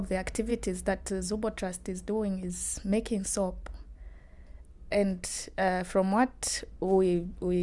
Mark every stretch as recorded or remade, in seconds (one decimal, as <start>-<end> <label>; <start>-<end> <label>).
0.0-7.6 recorded